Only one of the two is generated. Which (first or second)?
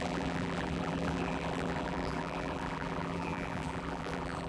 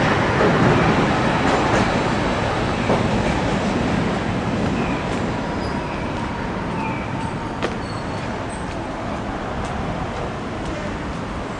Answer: first